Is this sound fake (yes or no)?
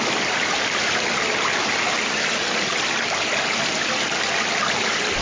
no